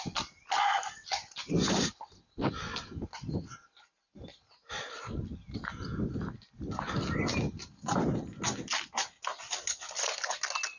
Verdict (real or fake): real